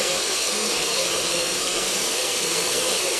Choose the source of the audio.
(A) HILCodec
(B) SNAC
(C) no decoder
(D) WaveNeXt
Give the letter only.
B